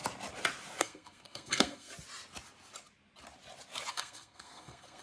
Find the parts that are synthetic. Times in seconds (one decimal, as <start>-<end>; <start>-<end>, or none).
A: 0.8-1.9; 3.9-5.0